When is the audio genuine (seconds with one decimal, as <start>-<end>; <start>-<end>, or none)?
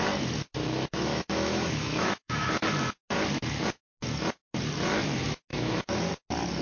0.0-0.6; 2.6-5.5; 6.1-6.6